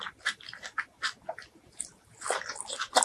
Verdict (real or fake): real